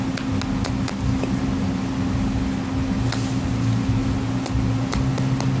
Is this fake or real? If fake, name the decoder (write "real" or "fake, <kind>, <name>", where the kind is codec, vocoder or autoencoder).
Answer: real